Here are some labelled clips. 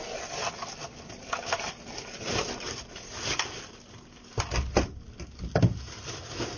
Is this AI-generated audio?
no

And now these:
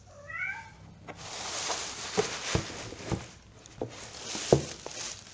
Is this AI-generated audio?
no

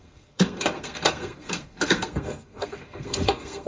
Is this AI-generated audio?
yes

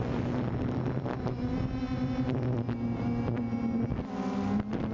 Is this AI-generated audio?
no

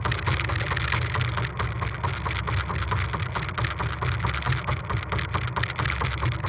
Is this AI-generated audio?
no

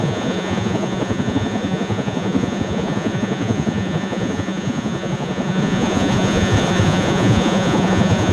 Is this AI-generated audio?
yes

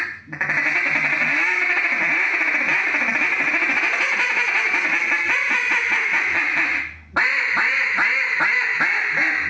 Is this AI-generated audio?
no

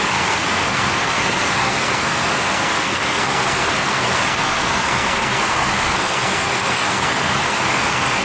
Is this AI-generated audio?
yes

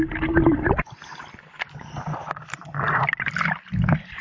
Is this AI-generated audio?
no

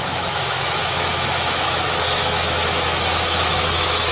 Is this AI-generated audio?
yes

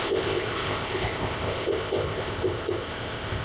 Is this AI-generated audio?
yes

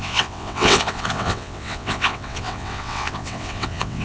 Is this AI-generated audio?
yes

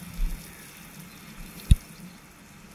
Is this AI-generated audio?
no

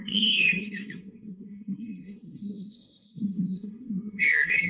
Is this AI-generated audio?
yes